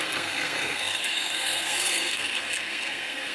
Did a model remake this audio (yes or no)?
yes